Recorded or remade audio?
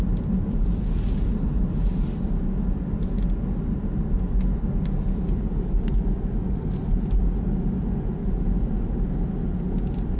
recorded